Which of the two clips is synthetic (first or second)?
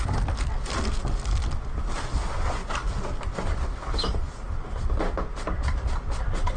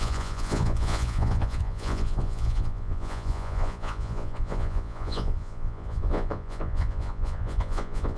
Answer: second